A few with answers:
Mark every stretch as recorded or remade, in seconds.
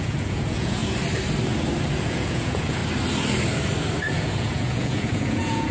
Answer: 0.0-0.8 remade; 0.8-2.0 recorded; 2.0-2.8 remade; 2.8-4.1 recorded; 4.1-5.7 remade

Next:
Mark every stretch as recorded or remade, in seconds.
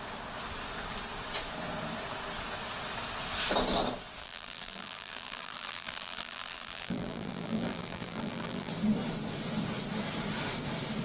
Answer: 0.0-4.2 recorded; 4.2-8.7 remade; 8.7-11.0 recorded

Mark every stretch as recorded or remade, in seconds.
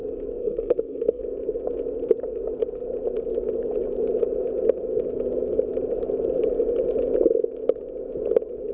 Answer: 0.0-0.4 recorded; 0.4-1.2 remade; 1.2-8.7 recorded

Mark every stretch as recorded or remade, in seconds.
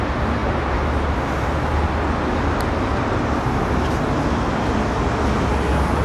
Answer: 0.0-6.0 recorded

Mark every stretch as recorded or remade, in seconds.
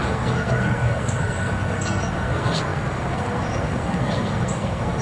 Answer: 0.0-5.0 remade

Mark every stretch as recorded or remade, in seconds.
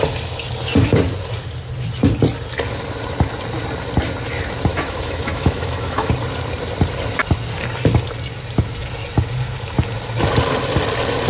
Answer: 0.0-4.7 recorded; 4.7-6.1 remade; 6.1-11.3 recorded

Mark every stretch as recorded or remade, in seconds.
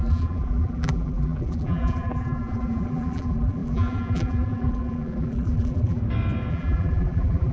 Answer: 0.0-6.0 remade; 6.0-6.5 recorded; 6.5-7.5 remade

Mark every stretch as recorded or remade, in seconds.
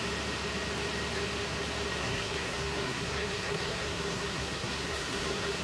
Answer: 0.0-2.0 recorded; 2.0-5.6 remade